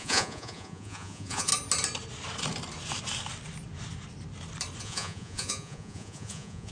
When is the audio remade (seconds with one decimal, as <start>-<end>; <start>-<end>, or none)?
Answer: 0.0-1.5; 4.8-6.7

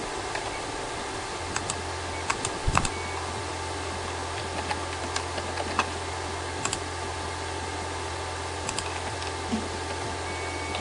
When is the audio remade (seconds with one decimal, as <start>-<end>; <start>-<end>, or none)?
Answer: 0.0-1.4; 2.3-2.9

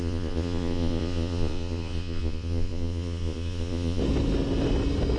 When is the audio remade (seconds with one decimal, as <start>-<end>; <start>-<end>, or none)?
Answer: 0.0-4.0

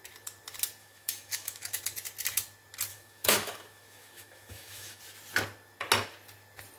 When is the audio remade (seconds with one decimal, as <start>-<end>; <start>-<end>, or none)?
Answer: 0.8-1.8; 2.9-5.0

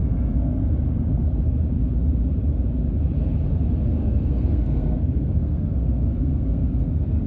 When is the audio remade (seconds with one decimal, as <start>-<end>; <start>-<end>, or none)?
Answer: 0.0-0.6; 4.0-7.3